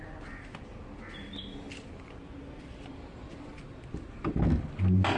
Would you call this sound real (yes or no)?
yes